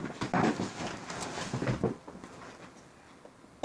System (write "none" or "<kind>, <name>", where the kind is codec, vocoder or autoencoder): none